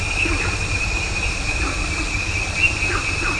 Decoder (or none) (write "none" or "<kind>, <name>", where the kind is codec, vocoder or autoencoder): none